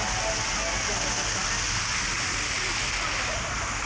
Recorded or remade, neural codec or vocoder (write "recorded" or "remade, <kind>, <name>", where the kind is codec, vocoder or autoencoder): recorded